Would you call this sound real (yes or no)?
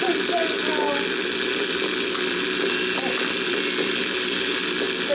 no